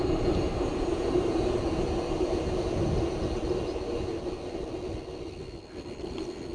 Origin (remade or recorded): recorded